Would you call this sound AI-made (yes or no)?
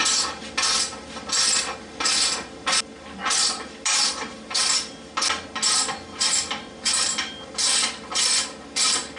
no